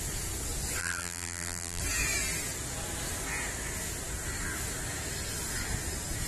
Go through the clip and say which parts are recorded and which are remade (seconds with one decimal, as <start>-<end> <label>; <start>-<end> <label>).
0.0-0.8 recorded; 0.8-1.8 remade; 1.8-6.3 recorded